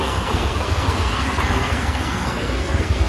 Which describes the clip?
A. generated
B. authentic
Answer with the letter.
A